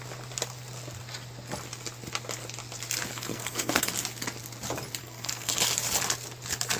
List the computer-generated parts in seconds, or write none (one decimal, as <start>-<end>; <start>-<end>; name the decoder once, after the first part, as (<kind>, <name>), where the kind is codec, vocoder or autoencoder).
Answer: 3.1-3.9 (codec, SNAC); 5.0-5.5